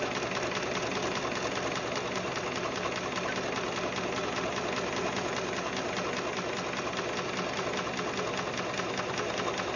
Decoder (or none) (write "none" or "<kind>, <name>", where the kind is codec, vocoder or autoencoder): none